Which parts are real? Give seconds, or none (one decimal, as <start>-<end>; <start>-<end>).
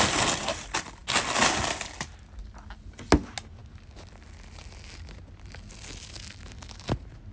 0.0-7.3